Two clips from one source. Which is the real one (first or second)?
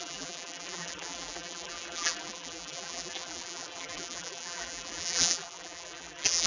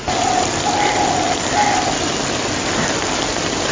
second